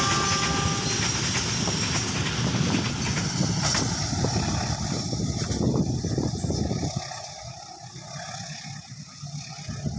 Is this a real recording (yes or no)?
yes